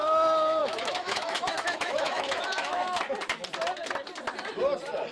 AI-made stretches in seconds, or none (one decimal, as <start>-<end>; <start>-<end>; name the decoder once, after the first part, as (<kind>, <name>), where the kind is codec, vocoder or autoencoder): 0.6-3.0 (autoencoder, DAC-VAE)